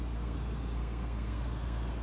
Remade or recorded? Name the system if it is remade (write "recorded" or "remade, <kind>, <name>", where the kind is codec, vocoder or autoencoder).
remade, codec, SNAC